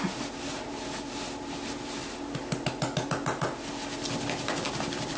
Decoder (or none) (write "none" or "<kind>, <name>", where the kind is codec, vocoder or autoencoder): none